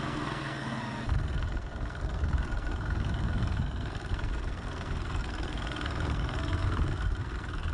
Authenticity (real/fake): fake